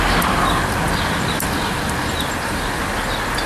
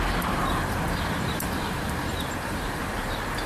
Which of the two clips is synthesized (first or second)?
second